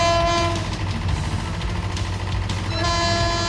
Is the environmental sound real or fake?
real